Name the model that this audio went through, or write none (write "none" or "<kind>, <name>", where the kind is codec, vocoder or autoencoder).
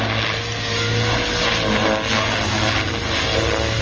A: none